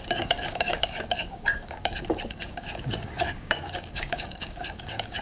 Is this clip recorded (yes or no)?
no